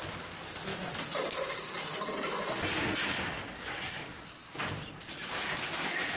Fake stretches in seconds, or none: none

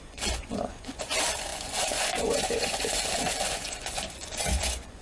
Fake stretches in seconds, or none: 0.0-5.0 (vocoder, Vocos)